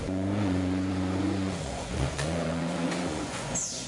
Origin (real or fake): fake